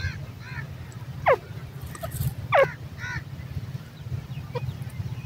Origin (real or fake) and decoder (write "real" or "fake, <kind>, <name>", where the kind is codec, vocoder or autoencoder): real